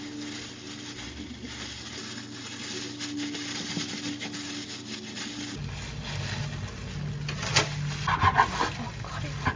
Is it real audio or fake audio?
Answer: real